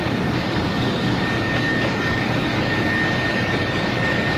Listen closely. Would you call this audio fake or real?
fake